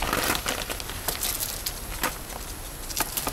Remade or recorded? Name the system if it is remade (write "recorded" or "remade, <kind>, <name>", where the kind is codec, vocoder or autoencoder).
recorded